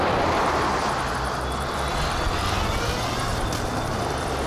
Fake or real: real